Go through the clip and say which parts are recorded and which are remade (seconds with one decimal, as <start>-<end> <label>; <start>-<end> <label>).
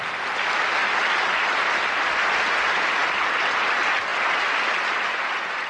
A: 0.0-5.7 recorded